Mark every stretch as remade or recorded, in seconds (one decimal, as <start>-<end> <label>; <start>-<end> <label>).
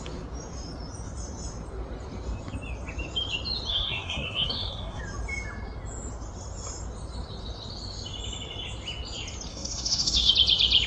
0.0-3.7 recorded; 3.7-5.0 remade; 5.0-9.5 recorded; 9.5-10.3 remade; 10.3-10.9 recorded